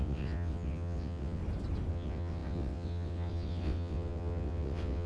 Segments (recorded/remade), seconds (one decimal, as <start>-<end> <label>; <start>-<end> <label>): 0.0-1.4 remade; 1.4-1.9 recorded; 1.9-5.1 remade